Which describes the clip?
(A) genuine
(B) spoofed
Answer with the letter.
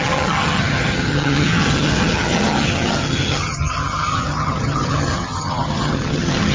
B